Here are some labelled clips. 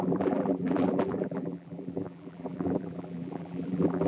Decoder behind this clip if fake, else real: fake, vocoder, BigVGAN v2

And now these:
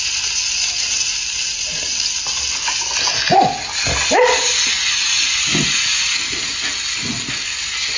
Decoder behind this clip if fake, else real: real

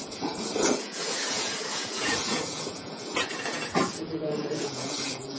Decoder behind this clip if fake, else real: fake, vocoder, Vocos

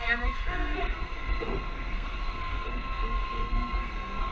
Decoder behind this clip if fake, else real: fake, codec, SNAC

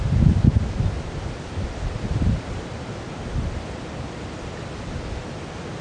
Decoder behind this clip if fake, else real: real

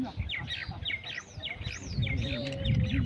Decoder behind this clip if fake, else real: real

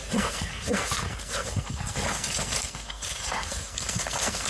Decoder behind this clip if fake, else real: fake, codec, SNAC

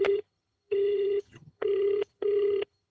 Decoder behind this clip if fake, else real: fake, vocoder, HiFi-GAN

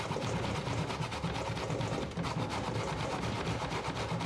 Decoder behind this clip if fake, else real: real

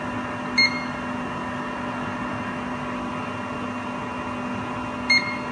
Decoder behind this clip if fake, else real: real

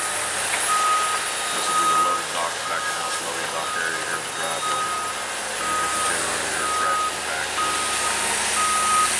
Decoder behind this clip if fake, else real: real